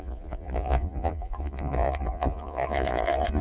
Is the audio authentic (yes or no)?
no